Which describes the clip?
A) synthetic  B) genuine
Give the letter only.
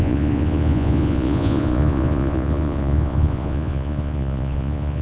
A